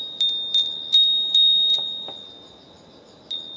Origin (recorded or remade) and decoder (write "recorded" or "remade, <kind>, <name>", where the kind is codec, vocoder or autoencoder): recorded